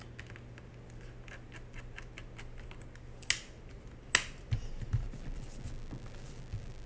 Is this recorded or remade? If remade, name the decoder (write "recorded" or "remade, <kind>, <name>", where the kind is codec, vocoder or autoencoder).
recorded